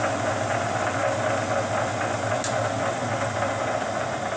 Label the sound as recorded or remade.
recorded